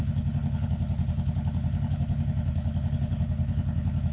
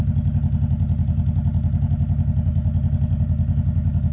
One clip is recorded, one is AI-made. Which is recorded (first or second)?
second